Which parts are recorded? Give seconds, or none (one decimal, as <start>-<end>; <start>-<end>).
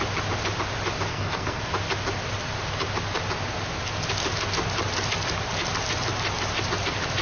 0.0-1.1; 1.6-7.2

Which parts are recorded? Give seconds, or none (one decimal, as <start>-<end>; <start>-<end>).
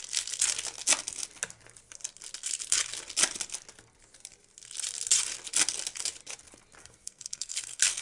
0.0-6.8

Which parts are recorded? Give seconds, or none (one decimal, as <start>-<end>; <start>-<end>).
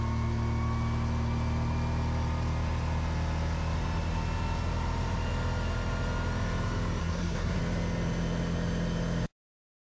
0.0-7.0; 7.6-9.9